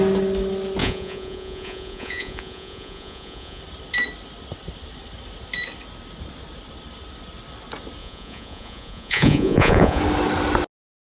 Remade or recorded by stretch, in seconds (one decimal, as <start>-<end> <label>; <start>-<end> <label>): 0.0-0.8 recorded; 0.8-3.6 remade; 3.6-8.0 recorded; 8.0-10.0 remade; 10.0-11.1 recorded